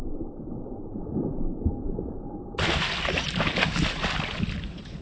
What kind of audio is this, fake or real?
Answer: real